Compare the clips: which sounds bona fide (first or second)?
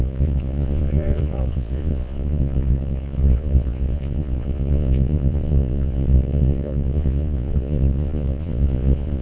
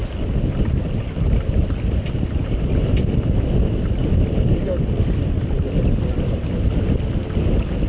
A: second